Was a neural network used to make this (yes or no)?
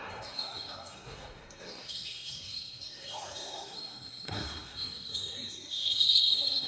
yes